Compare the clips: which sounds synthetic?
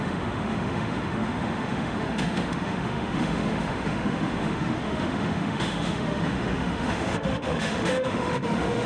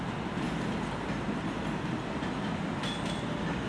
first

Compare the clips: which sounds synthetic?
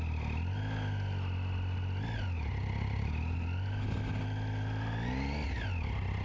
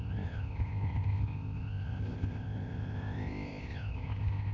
second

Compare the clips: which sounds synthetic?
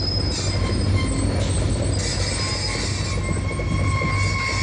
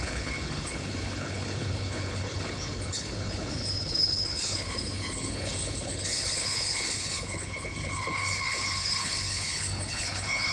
second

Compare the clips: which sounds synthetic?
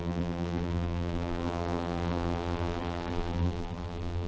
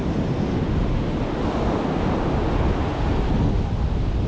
first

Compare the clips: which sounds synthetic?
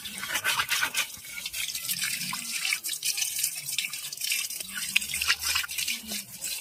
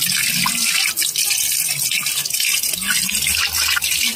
first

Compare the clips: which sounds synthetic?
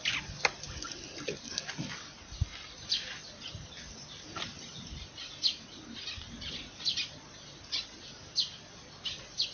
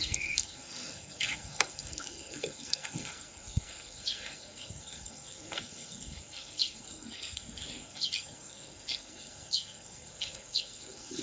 second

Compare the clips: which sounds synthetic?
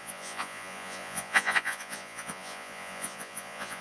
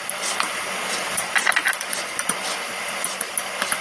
first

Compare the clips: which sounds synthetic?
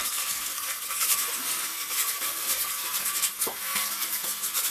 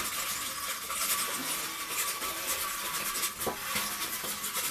first